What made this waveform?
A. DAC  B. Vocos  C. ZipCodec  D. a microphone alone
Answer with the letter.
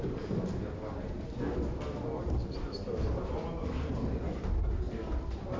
D